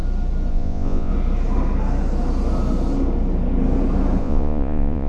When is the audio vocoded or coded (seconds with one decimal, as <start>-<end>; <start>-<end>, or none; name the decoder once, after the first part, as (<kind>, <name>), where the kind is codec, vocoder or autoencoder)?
0.5-1.1 (vocoder, Vocos); 4.2-5.1